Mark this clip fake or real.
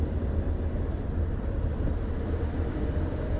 real